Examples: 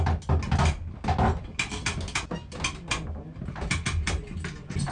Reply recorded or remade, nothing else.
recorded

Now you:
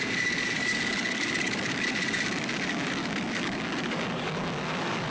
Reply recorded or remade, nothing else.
remade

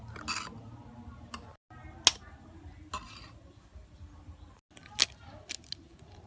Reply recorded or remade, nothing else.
recorded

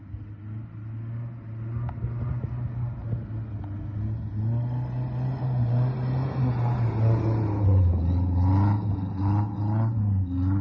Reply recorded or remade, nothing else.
recorded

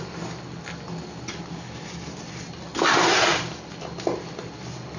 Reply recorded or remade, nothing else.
recorded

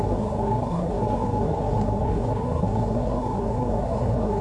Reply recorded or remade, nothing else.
remade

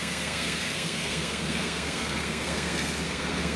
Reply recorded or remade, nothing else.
remade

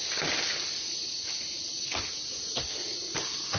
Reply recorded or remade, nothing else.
recorded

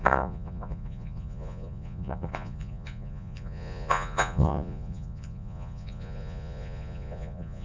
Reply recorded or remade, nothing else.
remade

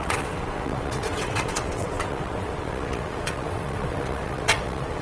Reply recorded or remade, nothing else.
remade